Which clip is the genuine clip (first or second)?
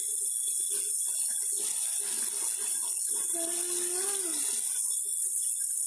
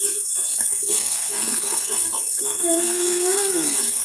first